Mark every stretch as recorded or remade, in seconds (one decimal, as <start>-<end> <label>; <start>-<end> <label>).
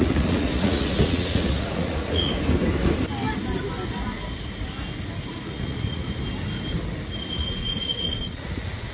0.0-2.3 remade; 2.3-5.2 recorded; 5.2-6.0 remade; 6.0-7.2 recorded; 7.2-8.9 remade